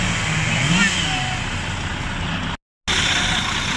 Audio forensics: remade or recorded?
recorded